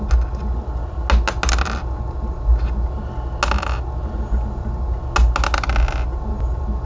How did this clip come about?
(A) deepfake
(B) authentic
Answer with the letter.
B